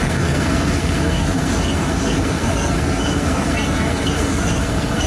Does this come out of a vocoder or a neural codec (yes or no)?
yes